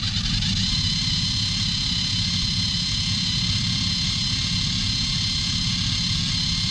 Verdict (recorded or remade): recorded